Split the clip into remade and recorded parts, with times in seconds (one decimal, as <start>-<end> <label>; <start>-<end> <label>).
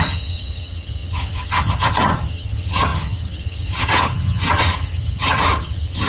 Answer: 0.0-6.1 remade